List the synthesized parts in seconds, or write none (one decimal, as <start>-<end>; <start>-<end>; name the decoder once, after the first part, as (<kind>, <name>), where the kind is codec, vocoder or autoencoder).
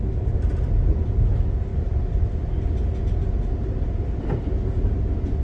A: none